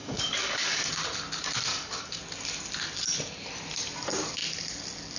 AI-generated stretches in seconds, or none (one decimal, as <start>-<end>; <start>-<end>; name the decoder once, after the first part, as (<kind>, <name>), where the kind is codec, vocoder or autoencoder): 0.0-0.9 (codec, DAC); 1.7-2.2